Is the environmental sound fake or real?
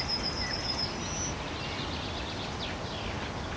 real